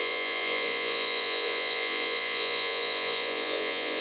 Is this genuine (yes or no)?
no